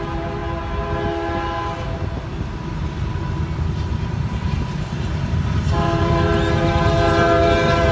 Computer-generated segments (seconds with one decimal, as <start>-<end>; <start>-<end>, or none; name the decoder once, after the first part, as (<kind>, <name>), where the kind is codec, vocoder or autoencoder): 0.0-0.4 (vocoder, BigVGAN v2); 3.7-7.9